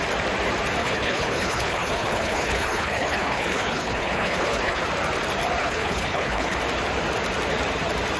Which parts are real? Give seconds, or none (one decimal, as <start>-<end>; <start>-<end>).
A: 0.0-0.8; 4.8-5.6; 6.6-8.2